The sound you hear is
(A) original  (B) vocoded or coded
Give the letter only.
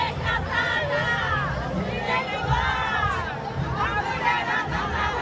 A